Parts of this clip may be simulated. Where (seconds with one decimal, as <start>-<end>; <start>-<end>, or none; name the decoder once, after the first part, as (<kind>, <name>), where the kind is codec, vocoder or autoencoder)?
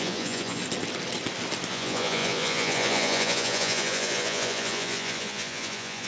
0.0-0.6 (vocoder, Vocos); 1.7-6.1